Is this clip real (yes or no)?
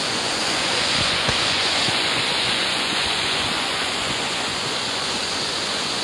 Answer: no